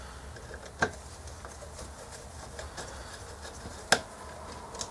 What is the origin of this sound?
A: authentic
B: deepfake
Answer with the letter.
A